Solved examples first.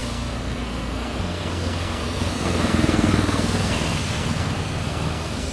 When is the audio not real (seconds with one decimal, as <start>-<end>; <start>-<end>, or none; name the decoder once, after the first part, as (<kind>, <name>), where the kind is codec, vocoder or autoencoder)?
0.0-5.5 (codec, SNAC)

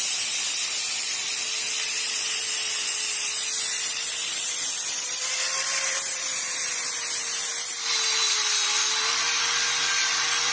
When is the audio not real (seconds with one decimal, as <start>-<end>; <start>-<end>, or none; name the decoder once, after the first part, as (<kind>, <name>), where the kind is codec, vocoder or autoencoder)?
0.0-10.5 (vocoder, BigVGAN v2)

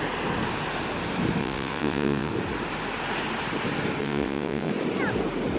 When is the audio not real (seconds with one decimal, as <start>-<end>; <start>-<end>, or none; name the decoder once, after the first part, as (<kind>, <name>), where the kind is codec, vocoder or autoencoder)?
1.4-2.3 (vocoder, WaveNeXt); 4.0-4.7

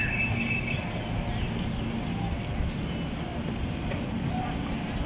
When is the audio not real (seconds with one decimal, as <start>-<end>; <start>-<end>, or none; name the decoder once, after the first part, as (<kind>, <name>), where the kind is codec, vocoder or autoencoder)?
3.3-4.2 (vocoder, BigVGAN v2)